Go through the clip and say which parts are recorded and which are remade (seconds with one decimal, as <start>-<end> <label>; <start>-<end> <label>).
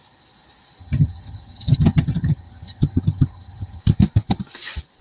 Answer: 0.0-0.8 recorded; 0.8-3.8 remade; 3.8-5.0 recorded